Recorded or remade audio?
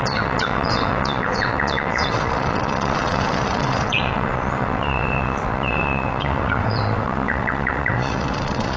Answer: remade